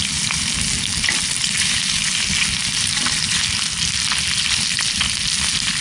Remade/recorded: recorded